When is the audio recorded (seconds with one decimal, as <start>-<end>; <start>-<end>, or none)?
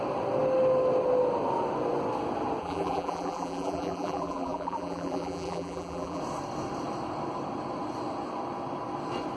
0.0-2.6; 6.2-9.4